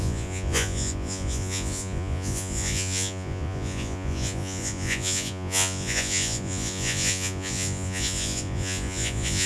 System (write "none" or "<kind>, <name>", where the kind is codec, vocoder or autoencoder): vocoder, Vocos